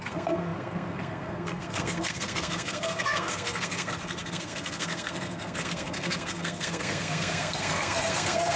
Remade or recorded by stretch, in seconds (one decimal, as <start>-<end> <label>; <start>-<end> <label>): 0.0-8.6 remade